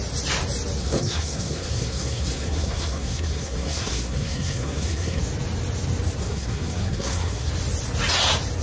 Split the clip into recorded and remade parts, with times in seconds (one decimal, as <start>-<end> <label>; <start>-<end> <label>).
0.0-0.8 recorded; 0.8-5.2 remade; 5.2-6.2 recorded; 6.2-7.5 remade; 7.5-8.6 recorded